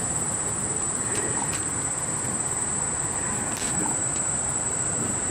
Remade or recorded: remade